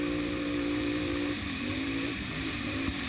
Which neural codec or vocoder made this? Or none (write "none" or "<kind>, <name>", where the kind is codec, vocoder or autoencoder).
vocoder, BigVGAN v2